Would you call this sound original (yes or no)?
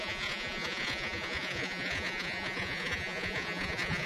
no